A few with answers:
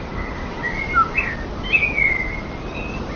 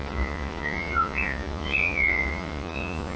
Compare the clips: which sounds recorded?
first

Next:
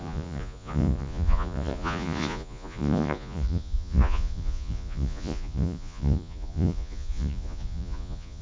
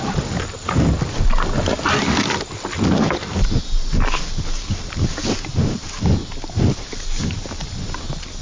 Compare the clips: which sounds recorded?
second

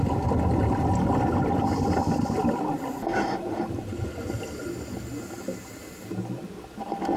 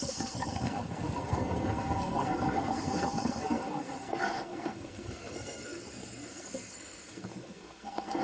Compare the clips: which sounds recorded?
first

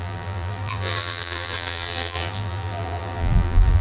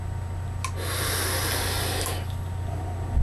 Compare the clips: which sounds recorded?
second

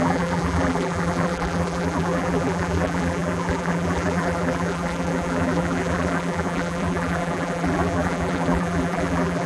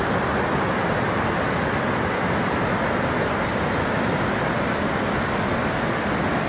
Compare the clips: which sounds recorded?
second